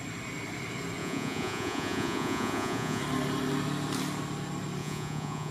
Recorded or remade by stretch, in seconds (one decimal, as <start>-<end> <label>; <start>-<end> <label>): 0.0-1.0 recorded; 1.0-3.0 remade; 3.0-4.8 recorded; 4.8-5.5 remade